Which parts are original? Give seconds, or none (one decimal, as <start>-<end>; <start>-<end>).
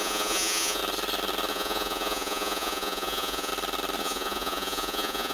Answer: 0.8-1.5; 3.5-4.0